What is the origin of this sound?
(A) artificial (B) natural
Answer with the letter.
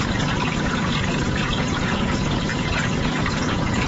A